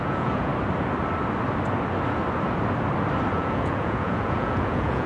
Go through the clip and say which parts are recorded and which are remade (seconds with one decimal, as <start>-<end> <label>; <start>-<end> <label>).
0.0-0.5 remade; 0.5-3.3 recorded; 3.3-5.1 remade